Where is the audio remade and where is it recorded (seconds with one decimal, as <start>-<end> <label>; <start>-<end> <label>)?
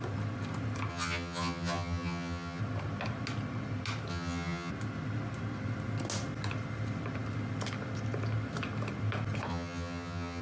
0.0-0.9 recorded; 0.9-2.6 remade; 2.6-4.1 recorded; 4.1-4.7 remade; 4.7-9.5 recorded; 9.5-10.4 remade